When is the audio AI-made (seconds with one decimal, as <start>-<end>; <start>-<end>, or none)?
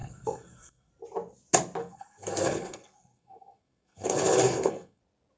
0.0-0.9; 1.8-5.0